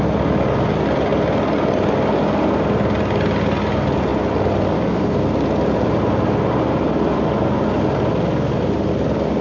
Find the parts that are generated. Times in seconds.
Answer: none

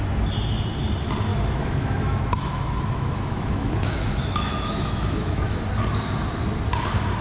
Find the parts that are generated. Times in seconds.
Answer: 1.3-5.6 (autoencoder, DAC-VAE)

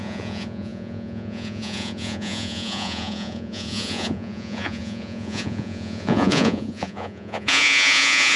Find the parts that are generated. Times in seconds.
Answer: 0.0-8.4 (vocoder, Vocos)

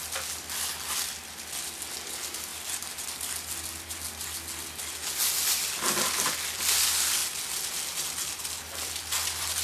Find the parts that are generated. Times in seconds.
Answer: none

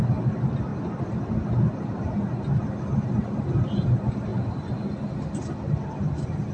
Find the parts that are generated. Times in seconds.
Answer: none